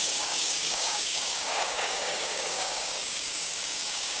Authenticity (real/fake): fake